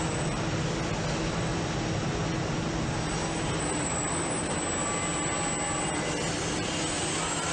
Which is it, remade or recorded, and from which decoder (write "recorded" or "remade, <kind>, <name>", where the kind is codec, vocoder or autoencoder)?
recorded